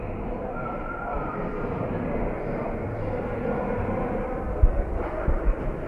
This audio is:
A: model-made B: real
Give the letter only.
A